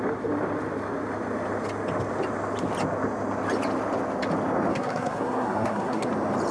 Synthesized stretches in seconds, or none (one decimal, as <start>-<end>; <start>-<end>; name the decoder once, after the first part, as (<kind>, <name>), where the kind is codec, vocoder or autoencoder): 4.7-6.1 (codec, SNAC)